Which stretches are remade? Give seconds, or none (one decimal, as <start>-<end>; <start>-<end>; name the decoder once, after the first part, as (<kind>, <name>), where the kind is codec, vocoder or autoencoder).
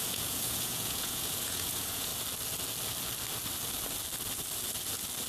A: 0.0-2.1 (vocoder, Vocos)